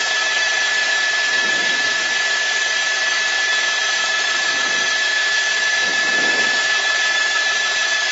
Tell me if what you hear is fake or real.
fake